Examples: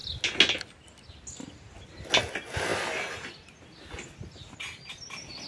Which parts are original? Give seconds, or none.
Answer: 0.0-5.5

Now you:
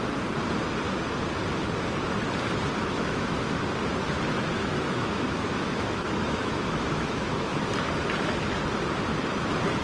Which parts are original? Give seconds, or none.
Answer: 0.0-2.8; 3.6-4.6; 7.6-9.8

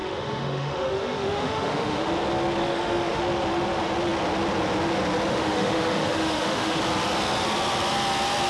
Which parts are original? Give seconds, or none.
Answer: 2.1-2.6; 3.2-5.3; 6.8-8.5

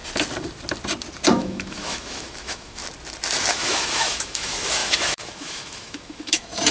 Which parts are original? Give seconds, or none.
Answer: 0.0-1.3; 2.8-3.5

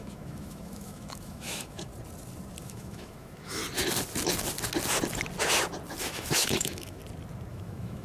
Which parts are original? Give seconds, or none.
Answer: 1.9-2.6; 3.6-6.0; 7.0-7.5